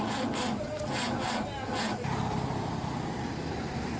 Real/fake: real